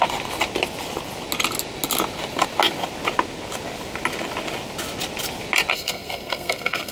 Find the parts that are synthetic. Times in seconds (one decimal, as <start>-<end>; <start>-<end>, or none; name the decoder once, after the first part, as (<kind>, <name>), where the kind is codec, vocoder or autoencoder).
5.7-6.9 (codec, SNAC)